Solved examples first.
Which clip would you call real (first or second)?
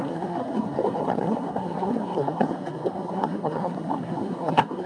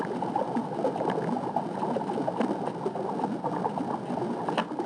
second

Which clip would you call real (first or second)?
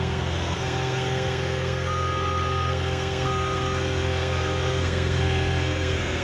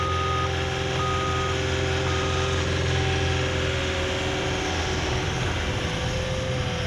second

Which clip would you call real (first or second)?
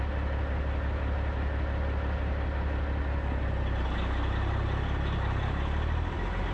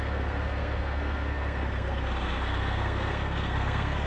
first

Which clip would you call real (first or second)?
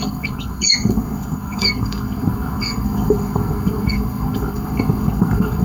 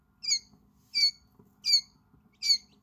second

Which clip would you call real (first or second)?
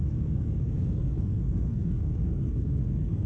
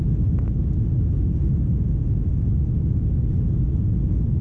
second